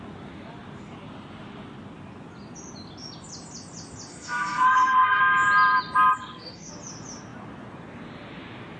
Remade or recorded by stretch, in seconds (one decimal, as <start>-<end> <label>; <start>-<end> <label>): 0.0-4.1 recorded; 4.1-5.2 remade; 5.2-6.1 recorded; 6.1-6.7 remade; 6.7-8.8 recorded